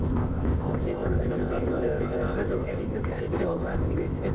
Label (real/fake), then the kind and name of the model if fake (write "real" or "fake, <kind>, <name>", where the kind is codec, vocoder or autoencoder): fake, codec, ZipCodec